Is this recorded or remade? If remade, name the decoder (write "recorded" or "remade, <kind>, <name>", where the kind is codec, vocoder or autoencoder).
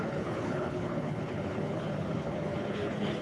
remade, codec, HILCodec